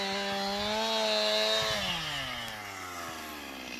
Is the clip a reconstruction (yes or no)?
no